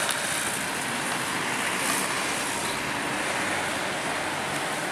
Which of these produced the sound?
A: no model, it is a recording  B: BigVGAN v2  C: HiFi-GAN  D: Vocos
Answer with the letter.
A